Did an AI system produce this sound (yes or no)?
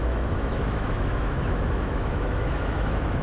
yes